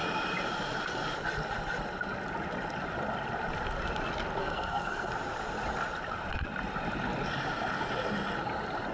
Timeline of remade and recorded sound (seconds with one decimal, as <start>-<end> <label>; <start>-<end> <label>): 0.0-4.4 recorded; 4.4-5.1 remade; 5.1-8.9 recorded